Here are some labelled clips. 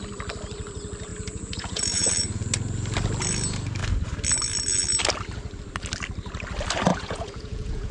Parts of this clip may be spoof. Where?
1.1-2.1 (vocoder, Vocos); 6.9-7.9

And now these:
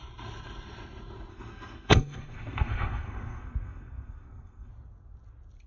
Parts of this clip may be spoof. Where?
1.3-4.7 (codec, SNAC)

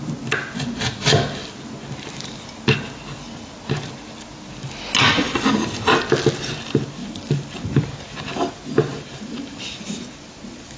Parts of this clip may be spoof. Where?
7.0-8.5 (vocoder, BigVGAN v2); 8.9-10.8

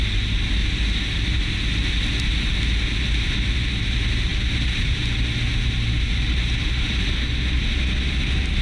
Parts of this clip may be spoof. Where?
0.6-1.9 (vocoder, BigVGAN v2); 4.3-7.1

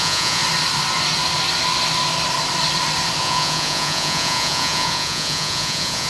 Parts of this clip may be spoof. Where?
0.0-0.4 (vocoder, Vocos); 3.2-6.1

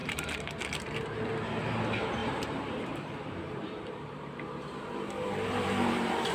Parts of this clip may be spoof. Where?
0.0-0.6 (vocoder, BigVGAN v2); 2.2-6.3